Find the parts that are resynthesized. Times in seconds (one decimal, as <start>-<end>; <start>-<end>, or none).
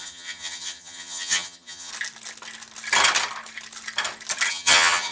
0.0-1.9; 4.5-5.1